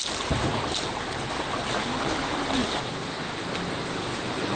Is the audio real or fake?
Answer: real